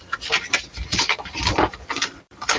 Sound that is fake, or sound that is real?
fake